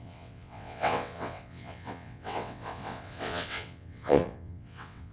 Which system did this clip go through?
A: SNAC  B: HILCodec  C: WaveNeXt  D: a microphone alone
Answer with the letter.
C